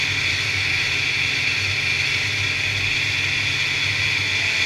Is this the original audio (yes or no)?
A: yes